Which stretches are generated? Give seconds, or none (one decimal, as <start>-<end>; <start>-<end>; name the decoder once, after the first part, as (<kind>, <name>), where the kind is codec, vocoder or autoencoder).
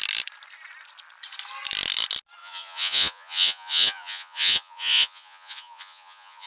2.4-6.5 (vocoder, Vocos)